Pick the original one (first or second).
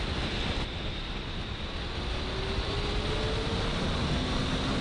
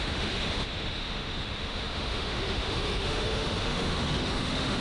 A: first